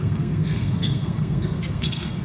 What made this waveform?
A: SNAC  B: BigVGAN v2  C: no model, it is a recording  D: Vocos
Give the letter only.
A